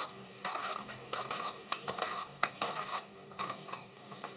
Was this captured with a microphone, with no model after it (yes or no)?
no